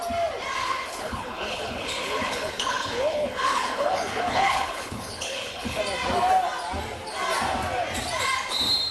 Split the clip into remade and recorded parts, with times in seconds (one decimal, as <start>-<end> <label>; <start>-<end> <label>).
0.0-0.6 recorded; 0.6-5.8 remade; 5.8-8.9 recorded